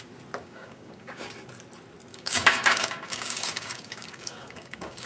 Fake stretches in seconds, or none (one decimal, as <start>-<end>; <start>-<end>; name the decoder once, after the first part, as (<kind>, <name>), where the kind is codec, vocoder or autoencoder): 0.4-1.3 (codec, DAC); 2.1-5.1